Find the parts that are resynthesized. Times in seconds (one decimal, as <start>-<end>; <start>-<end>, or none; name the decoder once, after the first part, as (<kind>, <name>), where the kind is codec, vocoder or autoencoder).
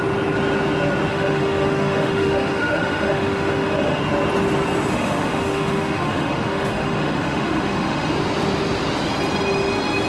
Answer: 1.1-4.0 (autoencoder, DAC-VAE); 4.9-8.1